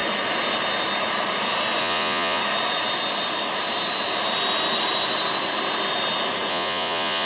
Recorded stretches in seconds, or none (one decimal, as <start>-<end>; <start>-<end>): 0.0-1.8; 2.4-6.5